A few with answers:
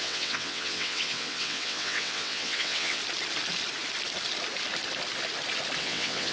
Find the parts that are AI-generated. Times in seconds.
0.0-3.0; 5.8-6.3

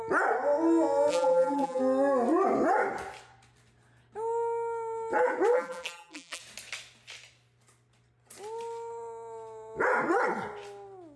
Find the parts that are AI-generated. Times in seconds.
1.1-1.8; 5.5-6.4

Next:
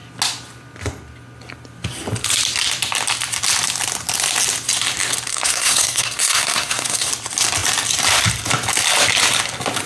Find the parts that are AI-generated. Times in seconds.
5.3-7.1